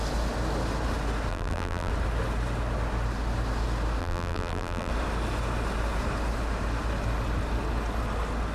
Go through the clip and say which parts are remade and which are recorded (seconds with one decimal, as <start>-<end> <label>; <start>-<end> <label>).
0.0-1.3 recorded; 1.3-1.9 remade; 1.9-4.0 recorded; 4.0-4.9 remade; 4.9-8.5 recorded